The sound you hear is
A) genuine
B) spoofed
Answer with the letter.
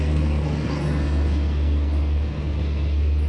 B